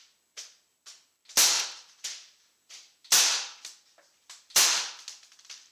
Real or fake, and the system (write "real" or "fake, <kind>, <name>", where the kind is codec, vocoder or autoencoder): fake, vocoder, BigVGAN v2